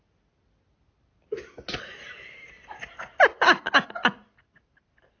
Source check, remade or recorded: recorded